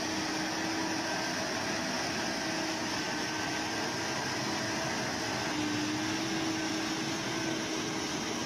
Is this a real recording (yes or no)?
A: yes